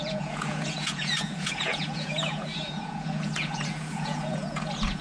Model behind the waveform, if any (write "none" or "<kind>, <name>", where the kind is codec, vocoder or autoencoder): vocoder, Vocos